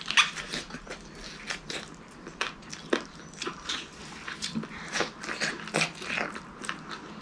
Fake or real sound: real